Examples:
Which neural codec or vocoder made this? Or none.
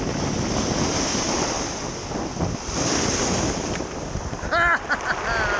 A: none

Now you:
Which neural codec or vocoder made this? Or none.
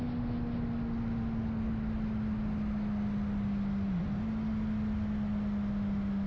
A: none